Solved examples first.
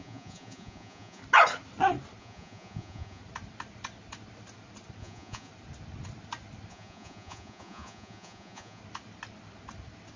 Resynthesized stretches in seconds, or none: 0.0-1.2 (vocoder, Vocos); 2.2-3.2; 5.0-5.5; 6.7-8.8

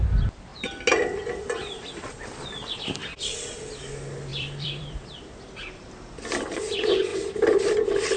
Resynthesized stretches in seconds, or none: 4.3-5.5 (vocoder, BigVGAN v2); 7.1-8.2